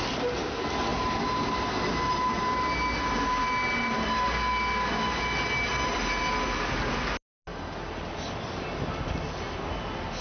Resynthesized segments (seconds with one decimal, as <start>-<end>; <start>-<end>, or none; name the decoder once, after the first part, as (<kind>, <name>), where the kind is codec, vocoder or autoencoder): none